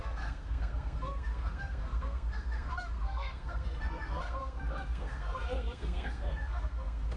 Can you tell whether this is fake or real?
fake